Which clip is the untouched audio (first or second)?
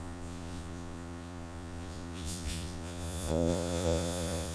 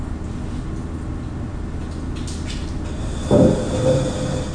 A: second